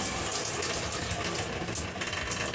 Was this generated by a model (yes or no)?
no